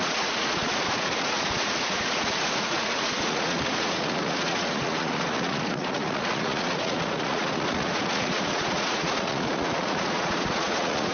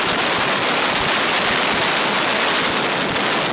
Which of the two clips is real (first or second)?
second